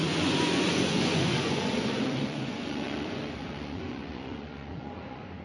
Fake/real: fake